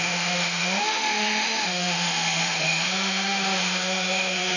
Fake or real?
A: fake